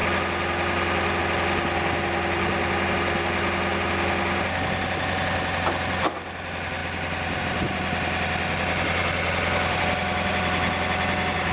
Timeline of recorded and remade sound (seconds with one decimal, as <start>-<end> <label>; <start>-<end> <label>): 0.0-6.8 recorded; 6.8-7.4 remade; 7.4-9.0 recorded; 9.0-9.8 remade; 9.8-11.5 recorded